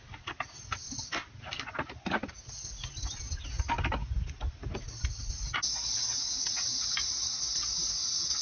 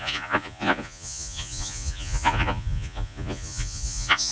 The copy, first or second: second